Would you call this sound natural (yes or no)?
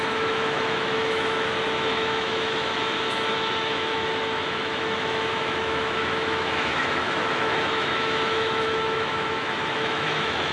no